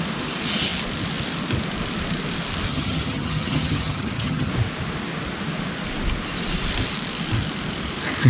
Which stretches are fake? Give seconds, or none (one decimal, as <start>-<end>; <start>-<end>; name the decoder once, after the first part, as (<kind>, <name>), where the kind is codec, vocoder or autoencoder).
2.7-4.5 (vocoder, HiFi-GAN)